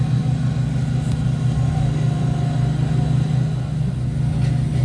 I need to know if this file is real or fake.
real